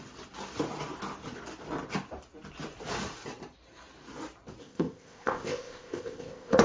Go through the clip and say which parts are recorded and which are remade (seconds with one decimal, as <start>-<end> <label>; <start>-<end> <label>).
0.0-4.6 recorded; 4.6-6.6 remade